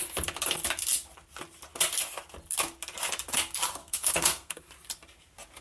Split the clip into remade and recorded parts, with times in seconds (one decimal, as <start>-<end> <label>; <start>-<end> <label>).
0.0-3.8 recorded; 3.8-4.6 remade; 4.6-5.6 recorded